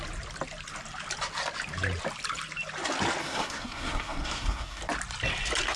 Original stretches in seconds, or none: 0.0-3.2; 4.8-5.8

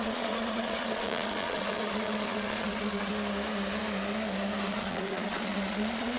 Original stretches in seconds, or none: 3.1-4.6

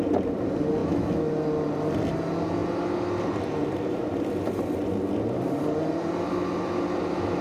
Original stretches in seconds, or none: 0.0-0.8; 1.3-7.4

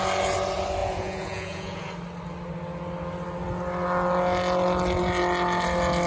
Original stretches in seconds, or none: 0.0-0.8; 1.9-6.1

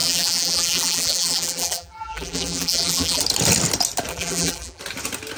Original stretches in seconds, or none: 3.2-4.1; 4.8-5.4

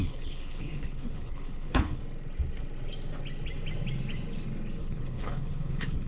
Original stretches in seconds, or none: 2.0-4.8